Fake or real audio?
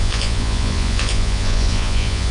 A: fake